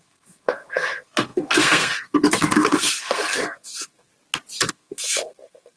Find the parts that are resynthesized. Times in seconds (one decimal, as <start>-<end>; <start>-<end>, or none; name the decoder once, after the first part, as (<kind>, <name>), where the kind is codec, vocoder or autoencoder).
0.0-4.1 (codec, SNAC); 4.7-5.8